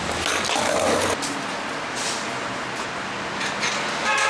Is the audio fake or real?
real